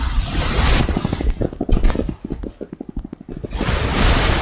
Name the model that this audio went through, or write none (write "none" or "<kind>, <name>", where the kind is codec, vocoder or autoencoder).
none